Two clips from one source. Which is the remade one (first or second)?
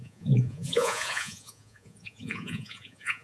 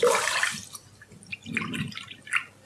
first